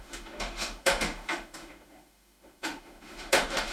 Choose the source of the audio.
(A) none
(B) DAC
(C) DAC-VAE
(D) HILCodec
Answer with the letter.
C